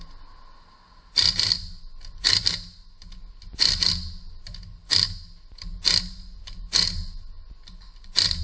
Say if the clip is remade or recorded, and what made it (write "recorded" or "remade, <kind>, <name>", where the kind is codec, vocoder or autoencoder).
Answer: recorded